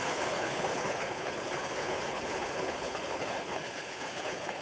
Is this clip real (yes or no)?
no